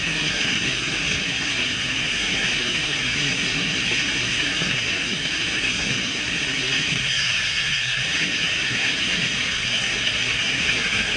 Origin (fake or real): fake